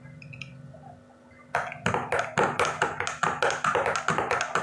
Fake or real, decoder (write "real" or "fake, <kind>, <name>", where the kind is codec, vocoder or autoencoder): real